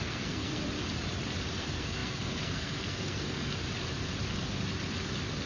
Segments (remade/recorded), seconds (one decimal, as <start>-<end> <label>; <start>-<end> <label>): 0.0-0.6 remade; 0.6-1.6 recorded; 1.6-3.6 remade; 3.6-5.5 recorded